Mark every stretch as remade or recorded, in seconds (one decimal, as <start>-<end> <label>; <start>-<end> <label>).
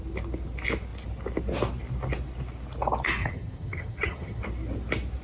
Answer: 0.0-3.2 recorded; 3.2-4.4 remade; 4.4-5.2 recorded